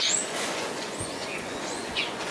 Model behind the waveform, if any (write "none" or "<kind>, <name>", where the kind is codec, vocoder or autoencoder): vocoder, Vocos